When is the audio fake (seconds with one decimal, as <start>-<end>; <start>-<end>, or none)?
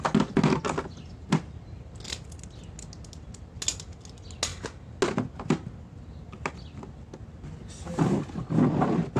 none